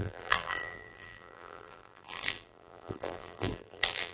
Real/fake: fake